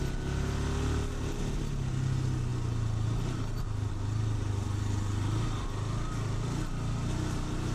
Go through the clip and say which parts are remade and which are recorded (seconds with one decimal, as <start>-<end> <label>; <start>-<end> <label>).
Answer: 0.0-7.7 recorded